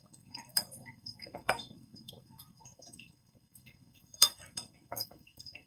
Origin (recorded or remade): remade